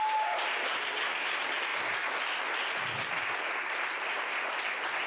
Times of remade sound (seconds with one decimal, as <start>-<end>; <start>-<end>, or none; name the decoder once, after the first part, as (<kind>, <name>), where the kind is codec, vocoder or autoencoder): none